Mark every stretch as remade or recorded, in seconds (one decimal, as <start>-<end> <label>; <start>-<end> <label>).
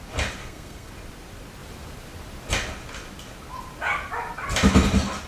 0.0-0.4 recorded; 0.4-0.9 remade; 0.9-5.3 recorded